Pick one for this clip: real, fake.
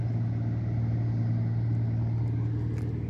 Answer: real